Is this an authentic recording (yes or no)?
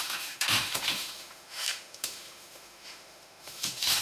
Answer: no